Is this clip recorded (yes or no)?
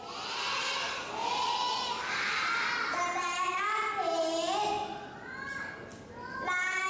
yes